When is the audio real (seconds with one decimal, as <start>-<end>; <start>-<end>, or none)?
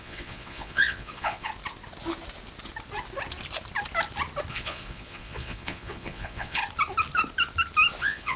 1.5-4.5; 6.6-8.0